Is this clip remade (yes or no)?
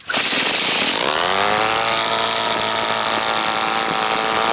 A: no